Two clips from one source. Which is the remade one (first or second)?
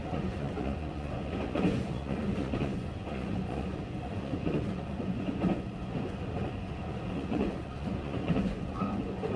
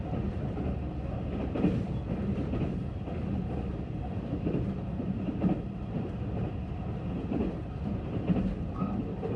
first